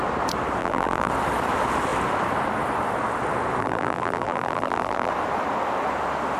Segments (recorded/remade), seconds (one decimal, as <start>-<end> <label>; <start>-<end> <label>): 0.0-0.6 recorded; 0.6-1.1 remade; 1.1-3.6 recorded; 3.6-5.1 remade; 5.1-6.4 recorded